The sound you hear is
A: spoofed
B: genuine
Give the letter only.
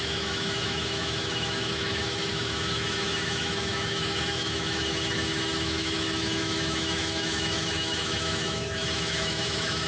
A